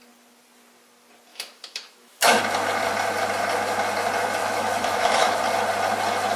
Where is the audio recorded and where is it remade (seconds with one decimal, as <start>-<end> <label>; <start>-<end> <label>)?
0.0-1.3 recorded; 1.3-2.4 remade; 2.4-4.4 recorded; 4.4-5.4 remade; 5.4-6.4 recorded